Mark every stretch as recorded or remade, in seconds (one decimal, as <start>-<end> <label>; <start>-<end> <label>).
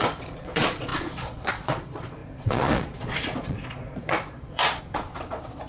0.0-5.7 remade